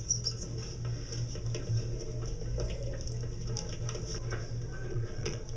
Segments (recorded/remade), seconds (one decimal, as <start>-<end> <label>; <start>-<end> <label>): 0.0-4.9 recorded; 4.9-5.6 remade